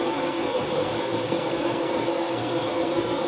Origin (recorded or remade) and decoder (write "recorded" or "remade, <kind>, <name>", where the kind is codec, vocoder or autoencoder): remade, codec, SNAC